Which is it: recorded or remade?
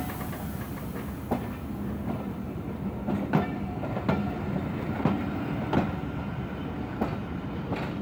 recorded